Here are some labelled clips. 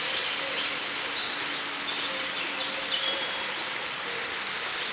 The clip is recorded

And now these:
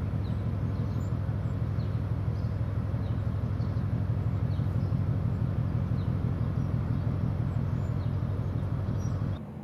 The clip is recorded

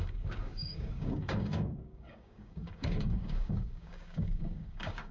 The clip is remade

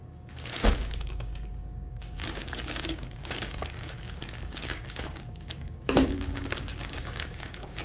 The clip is remade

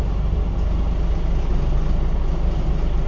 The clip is recorded